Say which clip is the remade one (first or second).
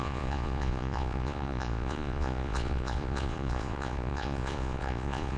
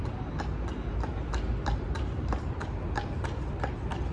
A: first